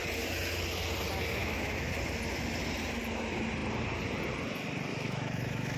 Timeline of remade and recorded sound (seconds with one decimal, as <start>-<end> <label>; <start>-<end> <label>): 0.0-1.4 recorded; 1.4-1.9 remade; 1.9-4.9 recorded; 4.9-5.8 remade